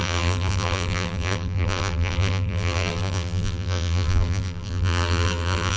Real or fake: fake